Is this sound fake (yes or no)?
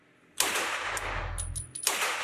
no